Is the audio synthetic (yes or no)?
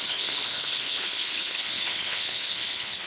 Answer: yes